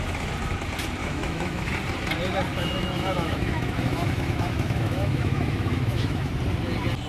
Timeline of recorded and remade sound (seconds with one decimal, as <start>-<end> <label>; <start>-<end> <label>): 0.0-1.0 recorded; 1.0-1.7 remade; 1.7-2.5 recorded; 2.5-6.3 remade; 6.3-7.1 recorded